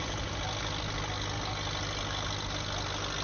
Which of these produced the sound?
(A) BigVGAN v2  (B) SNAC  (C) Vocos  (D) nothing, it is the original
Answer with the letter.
D